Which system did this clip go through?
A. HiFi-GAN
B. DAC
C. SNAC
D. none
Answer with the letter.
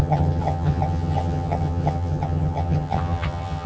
A